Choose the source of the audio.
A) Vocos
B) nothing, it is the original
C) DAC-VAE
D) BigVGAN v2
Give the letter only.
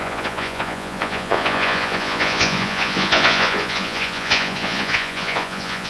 A